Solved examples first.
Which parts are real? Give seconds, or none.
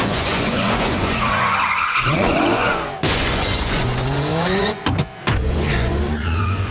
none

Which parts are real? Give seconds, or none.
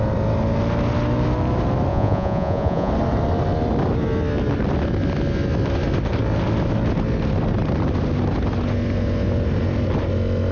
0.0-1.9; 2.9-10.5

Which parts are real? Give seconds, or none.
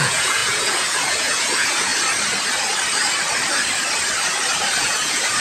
1.9-4.8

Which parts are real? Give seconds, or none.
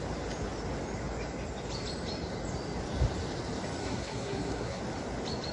0.0-3.8; 4.8-5.5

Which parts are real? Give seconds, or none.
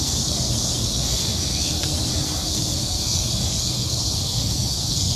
none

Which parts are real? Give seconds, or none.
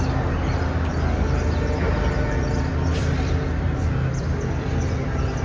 0.0-5.4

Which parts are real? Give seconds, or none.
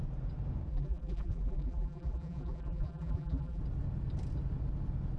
0.0-0.7; 3.6-5.2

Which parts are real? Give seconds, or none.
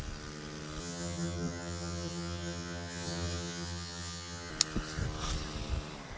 0.0-0.8; 4.5-6.2